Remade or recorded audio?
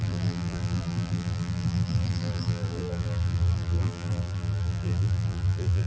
remade